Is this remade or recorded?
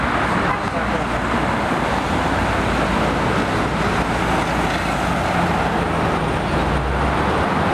recorded